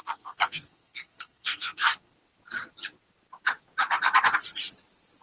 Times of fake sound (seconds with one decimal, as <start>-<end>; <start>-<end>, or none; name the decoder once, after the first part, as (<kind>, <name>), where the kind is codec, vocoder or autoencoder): 0.0-2.1 (codec, SNAC)